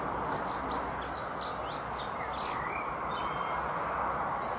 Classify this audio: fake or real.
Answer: real